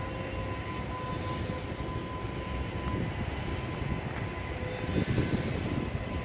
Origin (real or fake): real